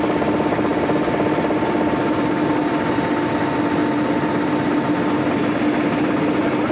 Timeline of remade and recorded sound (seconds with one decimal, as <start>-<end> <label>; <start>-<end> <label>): 0.0-6.7 recorded